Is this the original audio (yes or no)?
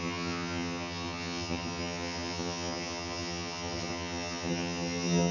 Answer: no